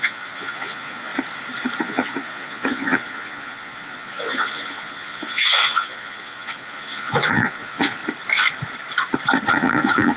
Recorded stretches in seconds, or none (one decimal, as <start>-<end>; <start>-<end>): 1.1-1.8; 8.0-9.5